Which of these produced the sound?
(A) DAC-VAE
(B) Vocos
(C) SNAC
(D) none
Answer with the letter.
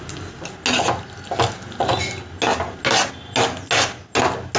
D